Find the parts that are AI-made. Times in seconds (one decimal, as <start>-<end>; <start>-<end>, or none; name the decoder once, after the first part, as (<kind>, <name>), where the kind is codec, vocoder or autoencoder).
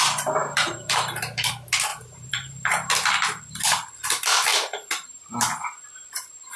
0.4-1.5 (vocoder, BigVGAN v2); 1.9-2.9; 4.5-6.6